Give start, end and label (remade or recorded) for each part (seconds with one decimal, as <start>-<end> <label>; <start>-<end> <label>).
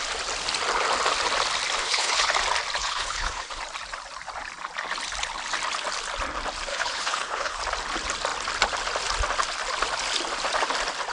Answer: 0.0-1.8 recorded; 1.8-2.3 remade; 2.3-2.8 recorded; 2.8-3.6 remade; 3.6-6.7 recorded; 6.7-7.6 remade; 7.6-11.1 recorded